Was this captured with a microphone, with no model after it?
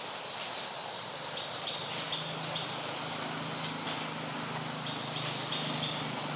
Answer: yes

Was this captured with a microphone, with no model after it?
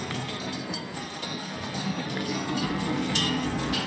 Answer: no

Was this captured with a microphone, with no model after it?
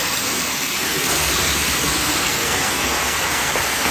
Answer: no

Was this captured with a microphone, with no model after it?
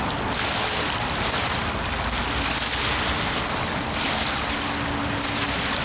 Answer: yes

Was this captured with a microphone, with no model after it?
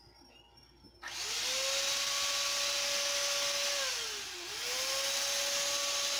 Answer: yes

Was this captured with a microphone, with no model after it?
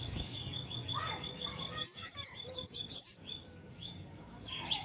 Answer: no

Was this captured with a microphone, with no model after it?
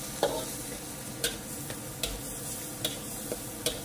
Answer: yes